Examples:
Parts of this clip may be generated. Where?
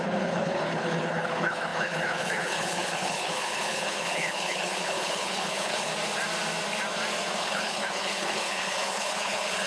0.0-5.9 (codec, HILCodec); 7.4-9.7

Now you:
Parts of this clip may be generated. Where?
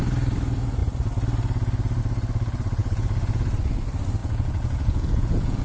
4.2-5.6 (vocoder, Vocos)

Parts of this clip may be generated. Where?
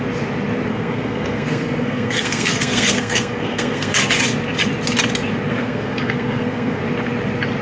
0.7-4.0 (codec, SNAC); 5.5-6.8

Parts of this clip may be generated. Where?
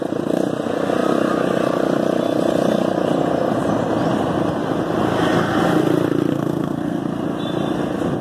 6.3-7.0 (codec, SNAC)